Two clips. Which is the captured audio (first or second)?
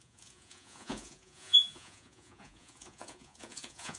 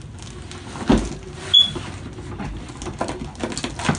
second